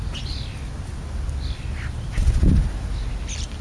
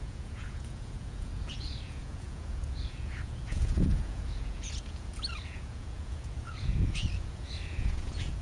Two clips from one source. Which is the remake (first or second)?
second